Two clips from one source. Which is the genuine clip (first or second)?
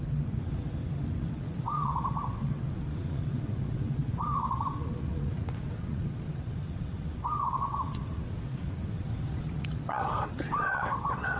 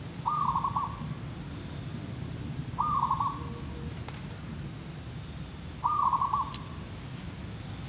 second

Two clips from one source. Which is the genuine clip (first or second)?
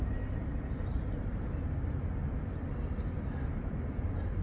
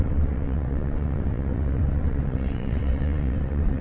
first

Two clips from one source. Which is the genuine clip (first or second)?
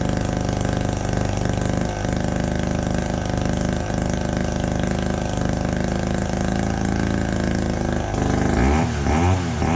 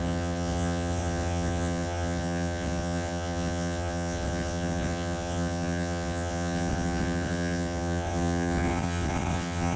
first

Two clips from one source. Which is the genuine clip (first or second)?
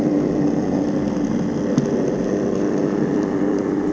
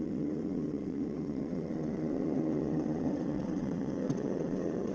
first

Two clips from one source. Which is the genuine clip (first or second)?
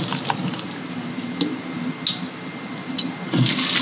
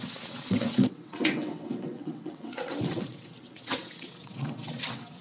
first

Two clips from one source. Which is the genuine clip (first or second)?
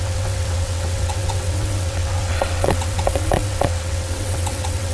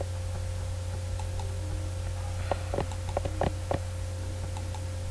second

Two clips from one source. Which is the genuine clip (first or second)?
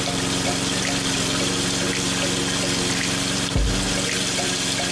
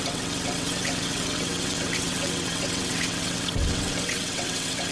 first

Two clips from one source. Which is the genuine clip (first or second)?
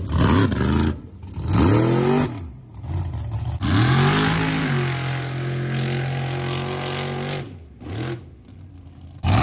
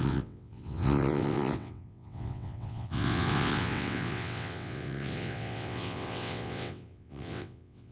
first